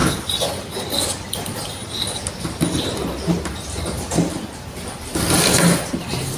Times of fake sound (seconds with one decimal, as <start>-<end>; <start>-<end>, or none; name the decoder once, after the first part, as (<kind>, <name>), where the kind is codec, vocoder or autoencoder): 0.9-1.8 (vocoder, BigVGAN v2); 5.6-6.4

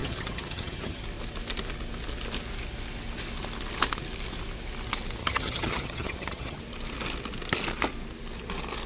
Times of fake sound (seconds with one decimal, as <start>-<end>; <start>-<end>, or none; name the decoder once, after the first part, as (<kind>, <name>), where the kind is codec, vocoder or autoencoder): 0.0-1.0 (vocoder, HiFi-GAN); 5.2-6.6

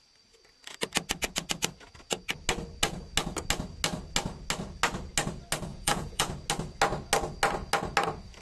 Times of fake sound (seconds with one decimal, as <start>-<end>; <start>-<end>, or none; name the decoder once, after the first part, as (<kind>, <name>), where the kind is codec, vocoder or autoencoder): 5.7-6.3 (vocoder, Vocos)

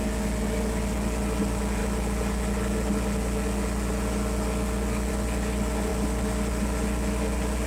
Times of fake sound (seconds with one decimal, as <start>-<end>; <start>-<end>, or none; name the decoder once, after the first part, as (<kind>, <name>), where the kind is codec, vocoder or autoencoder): none

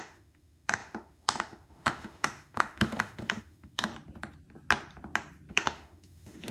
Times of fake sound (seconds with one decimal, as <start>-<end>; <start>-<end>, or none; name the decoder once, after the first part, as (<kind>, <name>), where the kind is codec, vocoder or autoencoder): 0.0-3.9 (autoencoder, DAC-VAE); 5.5-6.5

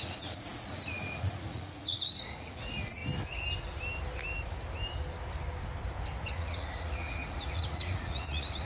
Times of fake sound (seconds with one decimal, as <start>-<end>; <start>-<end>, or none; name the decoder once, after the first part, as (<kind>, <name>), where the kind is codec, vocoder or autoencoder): 0.0-3.0 (vocoder, Vocos); 6.3-8.7

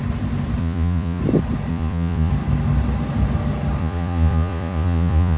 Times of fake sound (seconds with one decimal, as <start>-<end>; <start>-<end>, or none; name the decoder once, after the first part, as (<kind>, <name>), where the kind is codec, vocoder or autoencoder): 0.6-1.2 (vocoder, Vocos); 1.7-2.3; 3.8-5.4